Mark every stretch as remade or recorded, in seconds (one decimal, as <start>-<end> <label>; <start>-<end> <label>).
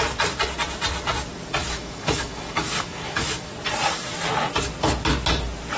0.0-1.6 recorded; 1.6-3.5 remade; 3.5-5.8 recorded